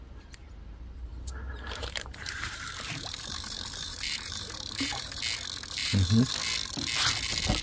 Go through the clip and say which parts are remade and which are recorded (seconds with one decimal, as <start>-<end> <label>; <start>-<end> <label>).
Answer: 0.0-1.1 recorded; 1.1-5.2 remade; 5.2-5.8 recorded; 5.8-6.3 remade; 6.3-7.6 recorded